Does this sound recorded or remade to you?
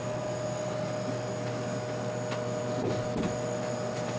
recorded